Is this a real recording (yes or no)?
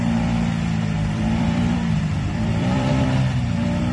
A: no